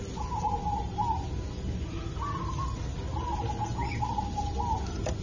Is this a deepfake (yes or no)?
no